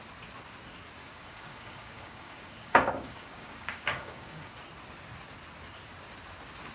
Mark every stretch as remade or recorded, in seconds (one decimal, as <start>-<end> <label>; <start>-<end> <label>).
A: 0.0-1.0 recorded; 1.0-4.5 remade; 4.5-6.7 recorded